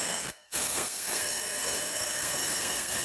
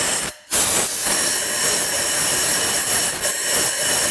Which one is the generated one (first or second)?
first